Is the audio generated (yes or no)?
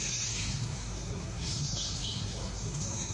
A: yes